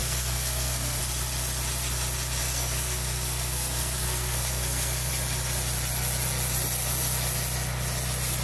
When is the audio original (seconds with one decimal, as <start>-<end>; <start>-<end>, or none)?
1.0-2.4; 5.1-8.4